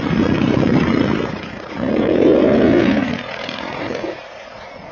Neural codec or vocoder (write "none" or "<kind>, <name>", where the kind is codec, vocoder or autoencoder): vocoder, Vocos